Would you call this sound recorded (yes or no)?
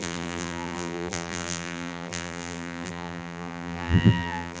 no